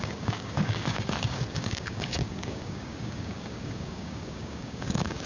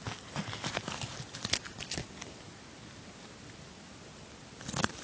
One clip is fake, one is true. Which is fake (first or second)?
first